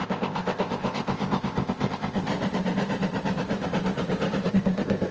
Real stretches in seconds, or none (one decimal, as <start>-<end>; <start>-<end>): 2.3-4.5